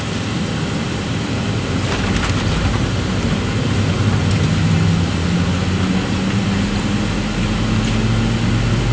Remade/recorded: recorded